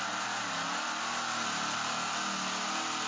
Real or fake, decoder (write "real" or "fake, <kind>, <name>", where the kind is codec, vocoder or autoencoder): real